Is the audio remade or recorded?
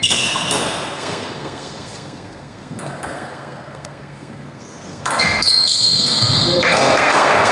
remade